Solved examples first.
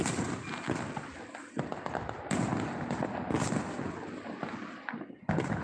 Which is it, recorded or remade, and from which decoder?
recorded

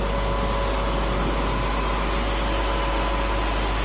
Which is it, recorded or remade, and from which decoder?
recorded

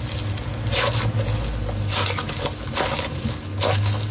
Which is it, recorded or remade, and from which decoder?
recorded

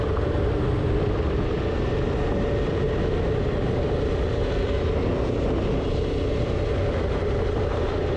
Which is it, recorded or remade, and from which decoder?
recorded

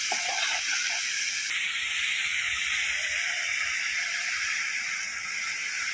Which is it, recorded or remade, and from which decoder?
recorded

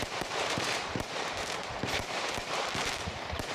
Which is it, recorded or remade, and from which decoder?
remade, vocoder, BigVGAN v2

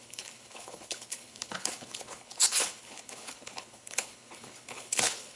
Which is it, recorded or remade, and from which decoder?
remade, codec, HILCodec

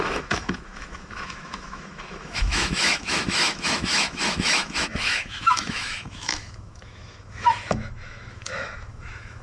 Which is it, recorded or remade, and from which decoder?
remade, autoencoder, DAC-VAE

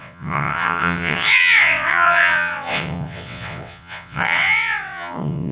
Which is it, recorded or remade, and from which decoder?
remade, vocoder, WaveNeXt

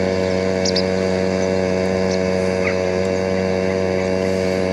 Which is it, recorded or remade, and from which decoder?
recorded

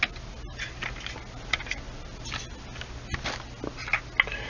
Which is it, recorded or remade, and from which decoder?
recorded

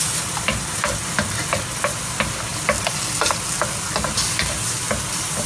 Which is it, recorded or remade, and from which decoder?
recorded